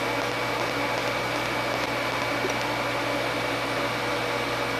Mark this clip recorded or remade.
recorded